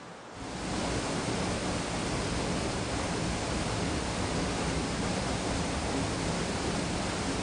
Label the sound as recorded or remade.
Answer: recorded